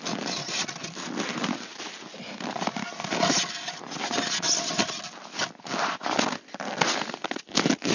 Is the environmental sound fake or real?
real